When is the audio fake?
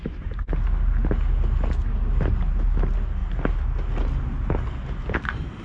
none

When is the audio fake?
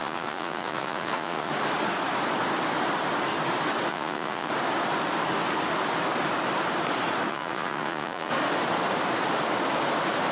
0.0-1.5 (vocoder, Vocos); 3.9-4.5; 7.3-8.3